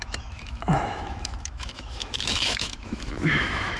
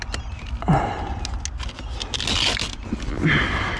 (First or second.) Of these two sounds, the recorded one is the second